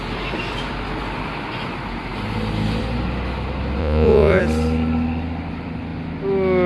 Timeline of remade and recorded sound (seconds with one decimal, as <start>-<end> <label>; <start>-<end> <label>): 0.0-3.8 recorded; 3.8-4.4 remade; 4.4-6.7 recorded